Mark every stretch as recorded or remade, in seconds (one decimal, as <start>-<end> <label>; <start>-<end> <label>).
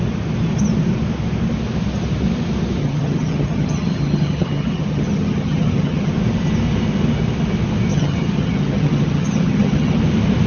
0.0-2.8 recorded; 2.8-6.1 remade; 6.1-7.9 recorded; 7.9-10.0 remade; 10.0-10.5 recorded